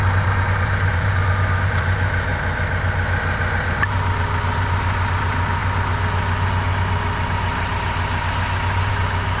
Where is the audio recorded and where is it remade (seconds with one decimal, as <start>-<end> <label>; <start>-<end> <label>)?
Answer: 0.0-2.3 remade; 2.3-3.5 recorded; 3.5-5.6 remade; 5.6-8.9 recorded; 8.9-9.4 remade